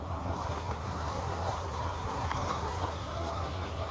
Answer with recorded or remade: remade